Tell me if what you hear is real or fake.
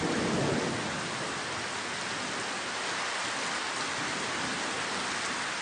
real